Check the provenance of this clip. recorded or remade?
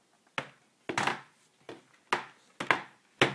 recorded